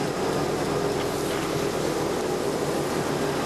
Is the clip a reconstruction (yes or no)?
no